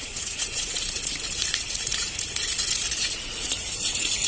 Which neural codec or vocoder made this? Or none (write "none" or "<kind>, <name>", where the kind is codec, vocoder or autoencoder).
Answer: vocoder, Vocos